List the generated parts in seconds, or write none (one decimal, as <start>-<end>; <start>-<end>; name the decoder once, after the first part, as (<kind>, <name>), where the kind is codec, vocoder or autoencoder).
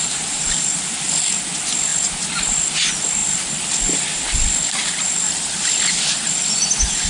none